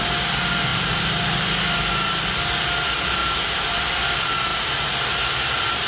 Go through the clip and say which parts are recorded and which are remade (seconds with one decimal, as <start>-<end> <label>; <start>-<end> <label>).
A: 0.0-3.2 recorded; 3.2-3.8 remade; 3.8-4.5 recorded; 4.5-5.2 remade; 5.2-5.9 recorded